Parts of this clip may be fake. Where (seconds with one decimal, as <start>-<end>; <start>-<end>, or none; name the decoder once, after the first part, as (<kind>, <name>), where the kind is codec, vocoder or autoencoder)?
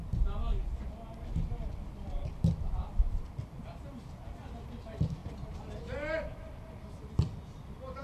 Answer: none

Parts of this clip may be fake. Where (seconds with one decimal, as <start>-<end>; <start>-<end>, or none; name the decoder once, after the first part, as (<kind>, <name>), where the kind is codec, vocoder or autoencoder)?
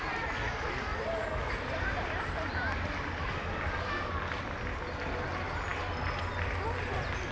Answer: none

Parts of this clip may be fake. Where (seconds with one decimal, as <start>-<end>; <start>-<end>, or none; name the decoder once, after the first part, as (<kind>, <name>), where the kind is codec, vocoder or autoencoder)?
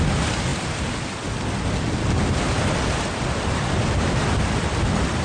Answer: none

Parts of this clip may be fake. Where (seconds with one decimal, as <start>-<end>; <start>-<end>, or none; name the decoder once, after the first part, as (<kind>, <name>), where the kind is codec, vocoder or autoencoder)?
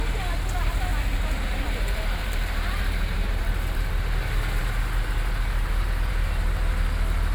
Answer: 0.9-3.9 (vocoder, BigVGAN v2)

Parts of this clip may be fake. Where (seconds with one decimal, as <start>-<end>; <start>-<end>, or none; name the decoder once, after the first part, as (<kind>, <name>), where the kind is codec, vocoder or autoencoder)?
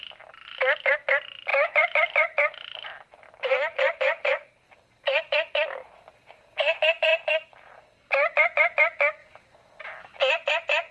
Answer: 1.5-3.2 (vocoder, BigVGAN v2); 3.7-5.9; 7.1-7.7; 9.2-10.3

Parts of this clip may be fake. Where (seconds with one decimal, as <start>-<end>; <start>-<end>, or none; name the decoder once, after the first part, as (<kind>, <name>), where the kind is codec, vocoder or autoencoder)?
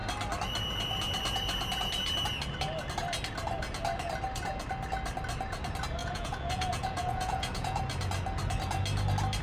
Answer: 6.0-7.8 (vocoder, Vocos)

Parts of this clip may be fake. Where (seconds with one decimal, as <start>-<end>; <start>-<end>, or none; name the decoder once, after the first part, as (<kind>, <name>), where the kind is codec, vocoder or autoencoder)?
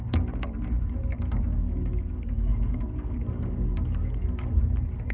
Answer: 1.5-4.6 (codec, DAC)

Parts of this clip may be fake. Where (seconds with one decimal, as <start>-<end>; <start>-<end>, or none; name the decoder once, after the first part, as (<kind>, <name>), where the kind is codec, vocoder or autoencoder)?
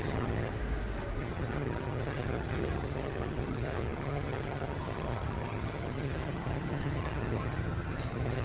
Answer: 0.0-0.5 (vocoder, HiFi-GAN); 1.2-8.4